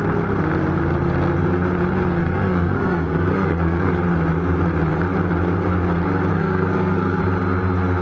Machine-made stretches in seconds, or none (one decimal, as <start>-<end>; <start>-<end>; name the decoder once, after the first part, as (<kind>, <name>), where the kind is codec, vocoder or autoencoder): 2.2-3.9 (codec, SNAC); 6.3-7.2